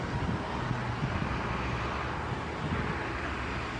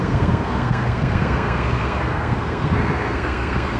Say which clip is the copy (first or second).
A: second